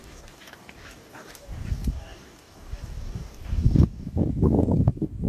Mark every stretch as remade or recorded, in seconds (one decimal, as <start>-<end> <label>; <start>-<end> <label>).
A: 0.0-5.3 remade